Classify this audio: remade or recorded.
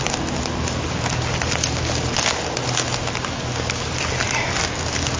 recorded